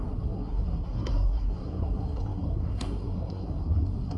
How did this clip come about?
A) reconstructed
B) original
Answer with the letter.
A